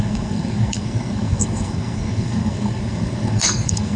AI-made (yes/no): yes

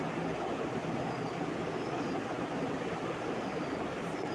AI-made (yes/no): no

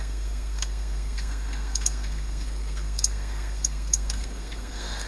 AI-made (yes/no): yes